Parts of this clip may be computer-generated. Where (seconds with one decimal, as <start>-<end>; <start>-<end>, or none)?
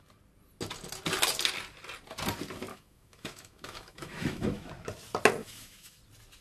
2.7-4.7; 5.4-6.0